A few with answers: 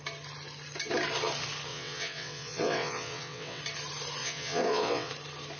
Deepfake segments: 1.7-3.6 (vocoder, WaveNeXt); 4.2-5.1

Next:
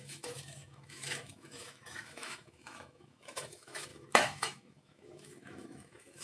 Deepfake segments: 0.0-6.2 (autoencoder, DAC-VAE)

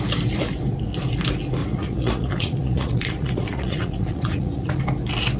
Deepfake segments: 1.6-4.8 (vocoder, Vocos)

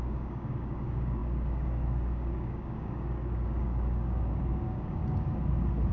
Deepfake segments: 0.0-5.0 (codec, DAC)